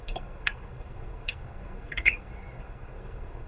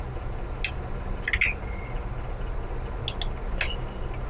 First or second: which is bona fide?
second